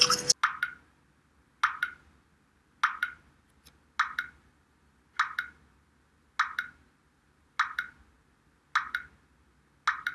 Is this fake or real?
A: real